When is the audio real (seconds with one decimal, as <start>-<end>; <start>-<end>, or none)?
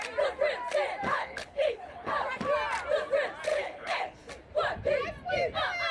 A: 0.0-1.1; 2.1-3.5; 4.3-5.9